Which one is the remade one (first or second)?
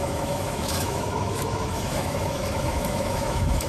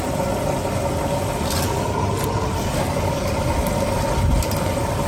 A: first